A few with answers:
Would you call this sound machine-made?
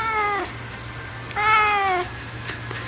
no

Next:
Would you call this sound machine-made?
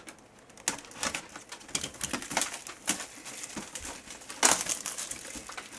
no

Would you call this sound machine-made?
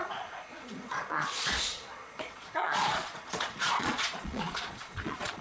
yes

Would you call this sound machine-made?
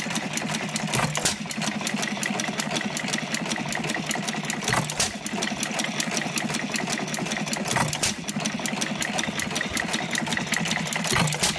no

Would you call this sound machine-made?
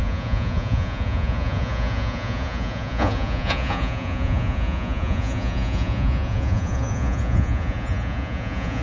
yes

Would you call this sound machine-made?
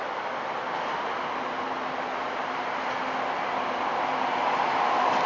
no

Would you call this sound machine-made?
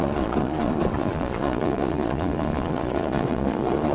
yes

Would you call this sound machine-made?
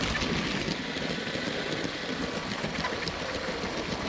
no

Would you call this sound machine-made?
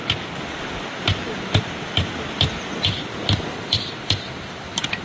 no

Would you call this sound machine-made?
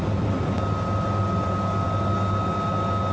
no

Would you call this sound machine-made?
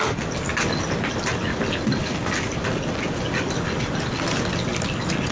no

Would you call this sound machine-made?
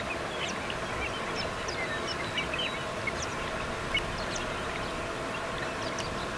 no